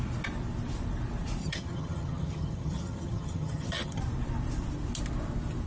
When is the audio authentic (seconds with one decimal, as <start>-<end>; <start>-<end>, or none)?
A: 0.0-1.4; 4.0-5.7